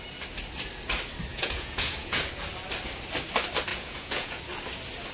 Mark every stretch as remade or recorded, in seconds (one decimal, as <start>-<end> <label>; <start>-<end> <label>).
0.0-1.3 recorded; 1.3-2.2 remade; 2.2-3.7 recorded; 3.7-4.4 remade; 4.4-5.1 recorded